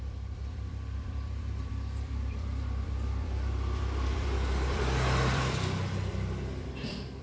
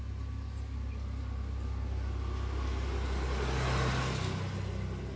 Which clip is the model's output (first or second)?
first